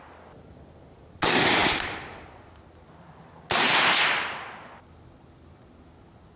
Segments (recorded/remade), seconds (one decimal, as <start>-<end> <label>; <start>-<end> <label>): 0.0-6.4 recorded

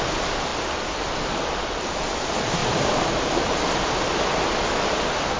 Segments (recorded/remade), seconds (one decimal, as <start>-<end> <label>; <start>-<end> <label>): 0.0-2.6 recorded; 2.6-3.1 remade; 3.1-5.4 recorded

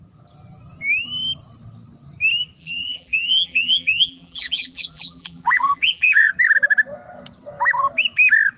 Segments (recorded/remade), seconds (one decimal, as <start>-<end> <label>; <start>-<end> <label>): 0.0-2.6 recorded; 2.6-6.3 remade; 6.3-8.6 recorded

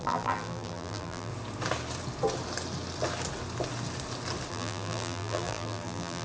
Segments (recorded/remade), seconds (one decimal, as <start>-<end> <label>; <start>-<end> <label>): 0.0-1.3 remade; 1.3-4.5 recorded; 4.5-6.2 remade

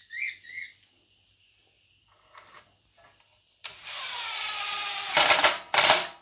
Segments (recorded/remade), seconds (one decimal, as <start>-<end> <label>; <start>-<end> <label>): 0.0-3.6 recorded; 3.6-5.6 remade; 5.6-6.2 recorded